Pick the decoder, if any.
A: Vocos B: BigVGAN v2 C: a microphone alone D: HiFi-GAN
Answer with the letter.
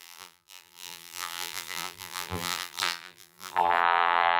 B